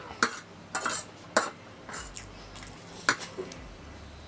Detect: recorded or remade recorded